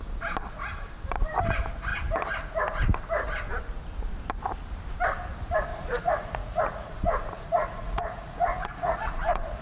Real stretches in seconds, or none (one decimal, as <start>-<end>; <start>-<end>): 0.0-5.7